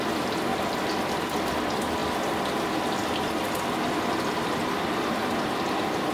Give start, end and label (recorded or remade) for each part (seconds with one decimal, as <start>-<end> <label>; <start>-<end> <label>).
0.0-6.1 recorded